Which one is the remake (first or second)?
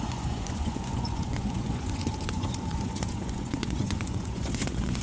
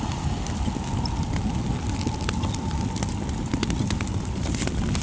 first